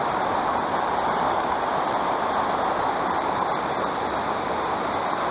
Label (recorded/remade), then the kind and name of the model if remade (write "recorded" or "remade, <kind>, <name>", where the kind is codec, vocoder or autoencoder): recorded